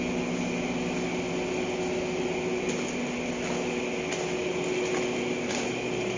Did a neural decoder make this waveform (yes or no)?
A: no